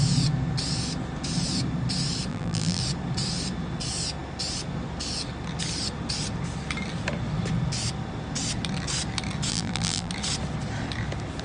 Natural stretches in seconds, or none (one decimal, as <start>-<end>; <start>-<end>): 0.0-2.3; 2.8-9.5; 10.1-11.4